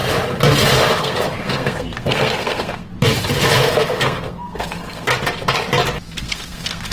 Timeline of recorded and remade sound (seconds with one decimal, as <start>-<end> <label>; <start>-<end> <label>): 0.0-1.0 recorded; 1.0-2.9 remade; 2.9-3.6 recorded; 3.6-5.1 remade; 5.1-6.2 recorded; 6.2-6.9 remade